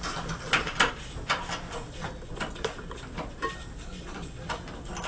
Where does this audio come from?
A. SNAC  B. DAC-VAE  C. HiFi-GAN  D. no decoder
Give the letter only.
D